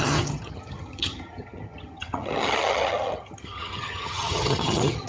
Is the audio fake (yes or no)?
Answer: yes